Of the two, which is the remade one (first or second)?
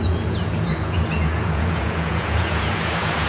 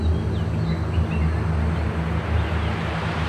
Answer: first